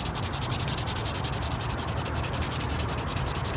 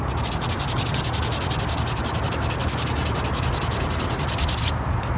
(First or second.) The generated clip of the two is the first